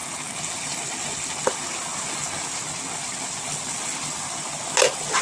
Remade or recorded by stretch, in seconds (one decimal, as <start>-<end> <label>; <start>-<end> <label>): 0.0-5.2 recorded